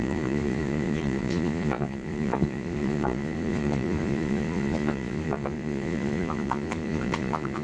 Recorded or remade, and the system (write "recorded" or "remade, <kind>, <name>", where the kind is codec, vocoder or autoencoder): remade, vocoder, Vocos